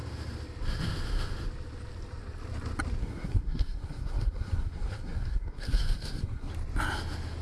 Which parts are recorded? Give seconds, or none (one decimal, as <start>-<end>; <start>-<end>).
0.0-3.0; 6.5-7.4